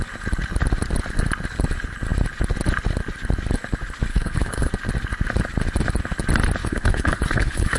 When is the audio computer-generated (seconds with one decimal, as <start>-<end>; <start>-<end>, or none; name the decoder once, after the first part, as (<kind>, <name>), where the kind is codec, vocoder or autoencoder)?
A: 4.1-4.7 (codec, HILCodec); 6.6-7.8